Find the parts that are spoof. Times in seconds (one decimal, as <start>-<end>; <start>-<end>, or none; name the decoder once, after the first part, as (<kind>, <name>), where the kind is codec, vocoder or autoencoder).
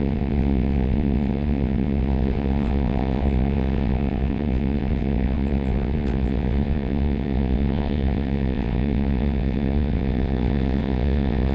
0.0-11.5 (vocoder, WaveNeXt)